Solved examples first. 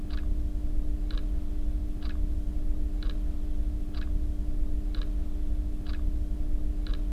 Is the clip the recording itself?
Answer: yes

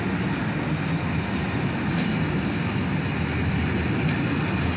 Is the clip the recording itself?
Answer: yes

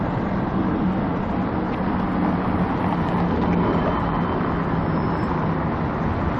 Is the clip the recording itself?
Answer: yes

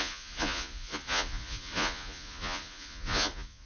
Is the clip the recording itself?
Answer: no